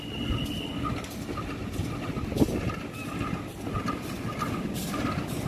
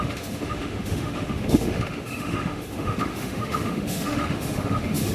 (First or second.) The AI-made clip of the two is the second